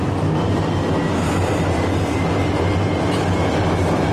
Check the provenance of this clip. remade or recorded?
recorded